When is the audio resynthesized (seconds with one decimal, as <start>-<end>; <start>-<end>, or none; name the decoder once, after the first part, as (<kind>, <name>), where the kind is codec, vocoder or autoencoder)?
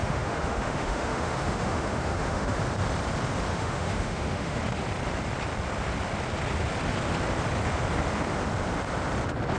0.0-2.6 (autoencoder, DAC-VAE); 3.5-4.6